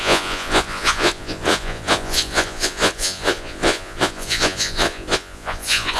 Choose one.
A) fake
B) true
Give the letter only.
A